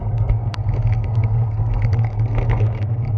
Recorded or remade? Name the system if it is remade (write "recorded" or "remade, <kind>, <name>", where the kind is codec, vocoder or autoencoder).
remade, codec, SNAC